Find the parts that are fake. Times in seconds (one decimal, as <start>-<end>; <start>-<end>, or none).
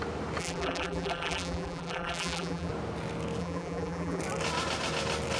0.4-2.7; 3.4-4.2